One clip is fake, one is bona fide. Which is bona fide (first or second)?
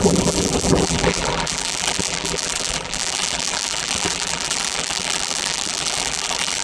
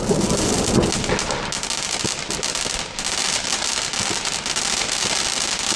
second